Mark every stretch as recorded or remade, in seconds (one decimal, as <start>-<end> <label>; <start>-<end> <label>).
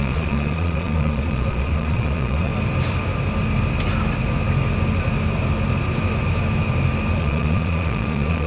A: 0.0-2.5 remade; 2.5-7.2 recorded; 7.2-8.5 remade